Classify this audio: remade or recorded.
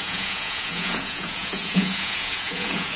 remade